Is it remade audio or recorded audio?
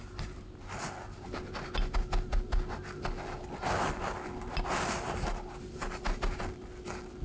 recorded